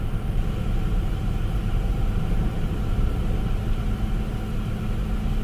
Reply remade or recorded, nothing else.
recorded